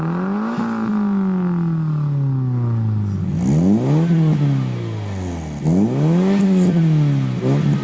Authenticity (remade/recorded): recorded